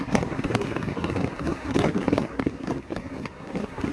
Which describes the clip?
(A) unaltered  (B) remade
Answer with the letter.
B